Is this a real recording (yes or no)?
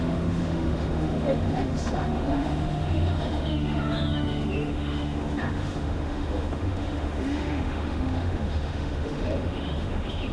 no